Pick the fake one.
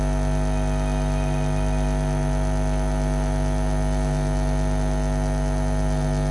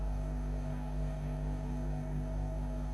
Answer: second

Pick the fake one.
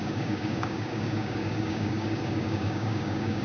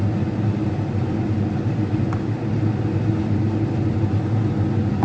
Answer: first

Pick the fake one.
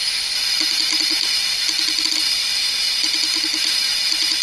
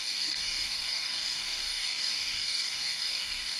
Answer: second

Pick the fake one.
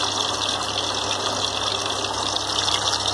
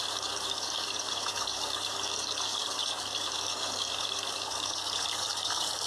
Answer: second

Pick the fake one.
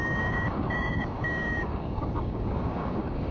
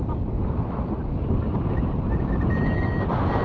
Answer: first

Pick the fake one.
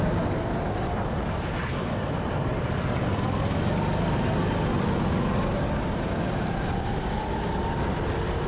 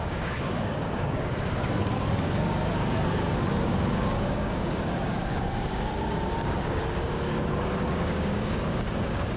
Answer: second